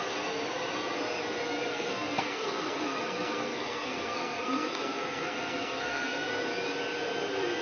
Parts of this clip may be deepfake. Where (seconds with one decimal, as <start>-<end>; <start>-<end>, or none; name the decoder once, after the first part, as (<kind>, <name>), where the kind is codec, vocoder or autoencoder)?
1.7-6.3 (codec, SNAC)